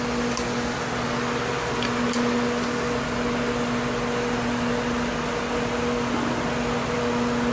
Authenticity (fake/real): real